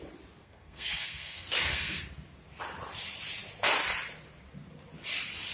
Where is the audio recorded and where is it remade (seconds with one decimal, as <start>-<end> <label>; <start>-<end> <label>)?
0.0-0.4 recorded; 0.4-2.0 remade; 2.0-5.5 recorded

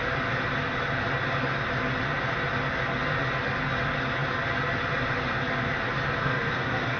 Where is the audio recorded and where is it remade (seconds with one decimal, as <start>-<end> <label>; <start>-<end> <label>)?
0.0-6.2 recorded; 6.2-7.0 remade

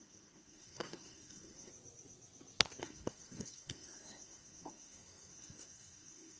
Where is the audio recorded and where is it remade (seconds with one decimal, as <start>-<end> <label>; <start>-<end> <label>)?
0.0-1.7 remade; 1.7-2.8 recorded; 2.8-6.4 remade

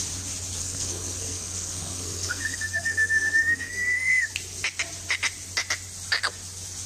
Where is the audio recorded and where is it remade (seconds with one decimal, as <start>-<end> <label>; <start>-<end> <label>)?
0.0-0.6 recorded; 0.6-4.3 remade; 4.3-6.9 recorded

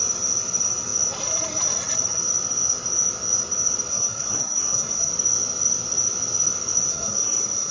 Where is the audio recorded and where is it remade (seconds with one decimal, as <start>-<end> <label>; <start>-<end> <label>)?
0.0-3.9 recorded; 3.9-5.1 remade; 5.1-6.9 recorded; 6.9-7.7 remade